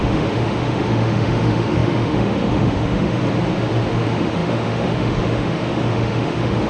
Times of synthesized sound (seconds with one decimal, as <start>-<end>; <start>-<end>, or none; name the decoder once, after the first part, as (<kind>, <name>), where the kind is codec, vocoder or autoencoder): 0.0-3.2 (autoencoder, DAC-VAE); 3.9-6.7

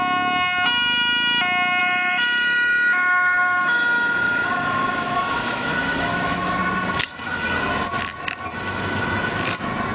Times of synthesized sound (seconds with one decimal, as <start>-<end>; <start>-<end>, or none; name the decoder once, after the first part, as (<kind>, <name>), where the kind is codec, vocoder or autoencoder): 1.8-6.6 (autoencoder, DAC-VAE)

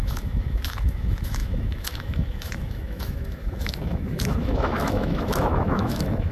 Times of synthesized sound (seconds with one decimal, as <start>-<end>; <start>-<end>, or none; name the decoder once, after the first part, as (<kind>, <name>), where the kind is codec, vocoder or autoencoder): 0.0-6.3 (autoencoder, DAC-VAE)

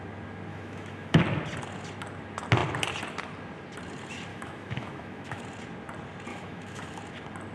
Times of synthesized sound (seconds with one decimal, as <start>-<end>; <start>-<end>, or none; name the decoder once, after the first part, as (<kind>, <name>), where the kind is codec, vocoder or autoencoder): 0.5-1.2 (autoencoder, DAC-VAE); 4.3-5.4; 6.3-7.0

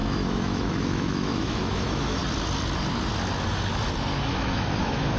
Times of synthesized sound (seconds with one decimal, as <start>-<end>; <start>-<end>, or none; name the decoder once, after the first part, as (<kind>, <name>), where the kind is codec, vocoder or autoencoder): 0.0-2.2 (autoencoder, DAC-VAE); 4.3-5.2

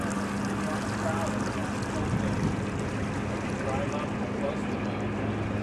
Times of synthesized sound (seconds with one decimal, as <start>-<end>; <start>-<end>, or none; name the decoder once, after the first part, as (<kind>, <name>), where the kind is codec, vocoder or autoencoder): none